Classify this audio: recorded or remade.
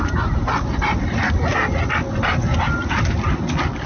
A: recorded